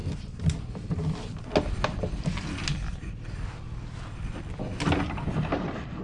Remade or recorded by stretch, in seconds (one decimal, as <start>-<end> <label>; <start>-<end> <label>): 0.0-6.0 recorded